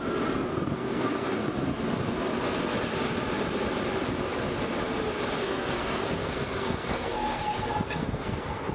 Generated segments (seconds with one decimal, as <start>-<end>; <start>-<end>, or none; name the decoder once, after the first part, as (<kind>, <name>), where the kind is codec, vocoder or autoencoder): 0.5-1.5 (codec, SNAC); 5.4-8.7